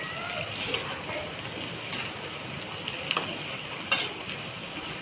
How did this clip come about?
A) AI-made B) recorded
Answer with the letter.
B